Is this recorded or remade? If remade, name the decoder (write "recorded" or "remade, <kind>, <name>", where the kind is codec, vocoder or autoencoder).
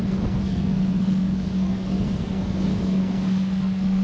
remade, codec, SNAC